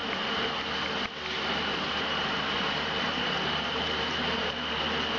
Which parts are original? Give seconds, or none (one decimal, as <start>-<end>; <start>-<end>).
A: 0.6-1.7; 4.8-5.2